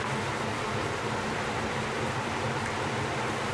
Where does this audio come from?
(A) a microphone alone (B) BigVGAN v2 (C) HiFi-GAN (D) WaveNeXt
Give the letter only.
B